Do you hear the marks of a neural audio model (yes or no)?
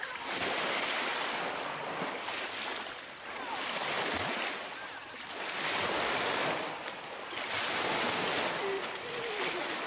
no